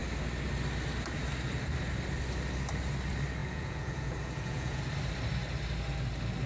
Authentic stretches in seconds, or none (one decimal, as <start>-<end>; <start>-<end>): 0.0-3.4; 4.8-6.5